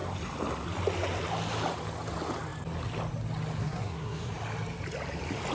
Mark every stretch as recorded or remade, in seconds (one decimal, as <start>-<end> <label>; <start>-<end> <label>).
0.0-3.6 recorded; 3.6-4.3 remade; 4.3-5.5 recorded